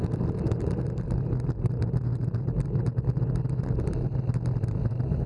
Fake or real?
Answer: real